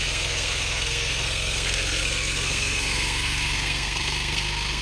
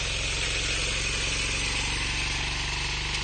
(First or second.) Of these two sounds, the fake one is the first